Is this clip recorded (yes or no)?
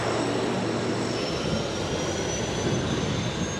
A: yes